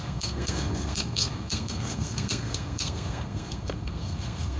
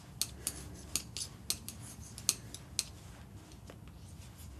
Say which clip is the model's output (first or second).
first